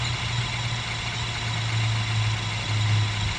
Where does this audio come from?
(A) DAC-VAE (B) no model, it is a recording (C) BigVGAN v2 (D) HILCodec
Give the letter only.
B